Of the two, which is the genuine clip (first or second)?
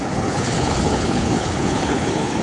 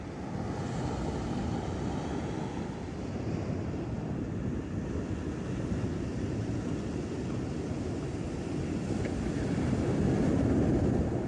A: second